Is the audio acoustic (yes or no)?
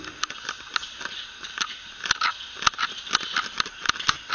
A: yes